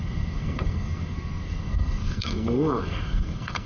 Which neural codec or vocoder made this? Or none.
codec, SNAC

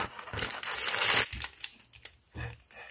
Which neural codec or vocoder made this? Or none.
none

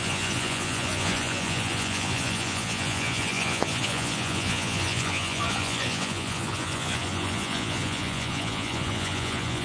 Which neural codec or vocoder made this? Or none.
vocoder, Vocos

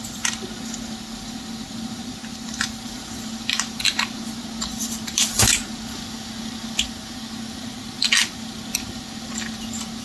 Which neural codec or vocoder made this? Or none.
none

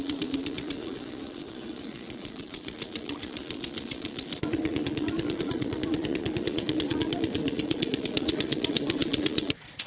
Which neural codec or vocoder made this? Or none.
vocoder, Vocos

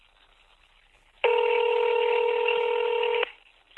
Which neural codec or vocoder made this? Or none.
none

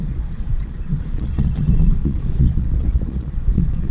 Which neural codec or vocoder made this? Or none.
vocoder, Vocos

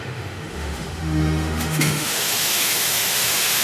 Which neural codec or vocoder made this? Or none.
autoencoder, DAC-VAE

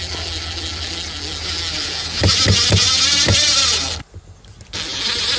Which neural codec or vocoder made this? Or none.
none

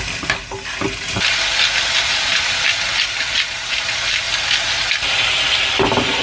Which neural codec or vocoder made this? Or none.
none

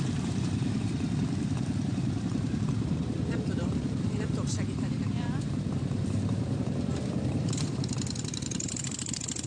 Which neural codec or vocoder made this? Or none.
vocoder, BigVGAN v2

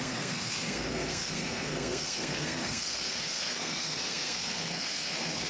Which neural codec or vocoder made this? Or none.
codec, SNAC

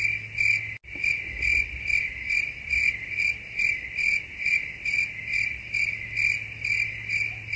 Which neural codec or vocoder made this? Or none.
none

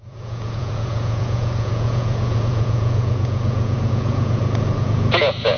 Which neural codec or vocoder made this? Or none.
vocoder, Vocos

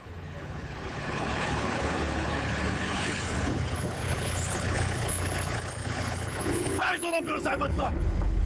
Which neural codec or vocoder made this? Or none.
codec, HILCodec